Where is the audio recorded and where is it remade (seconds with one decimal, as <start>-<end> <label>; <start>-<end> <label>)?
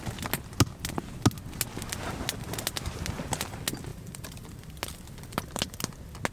0.0-3.9 recorded; 3.9-4.6 remade; 4.6-6.3 recorded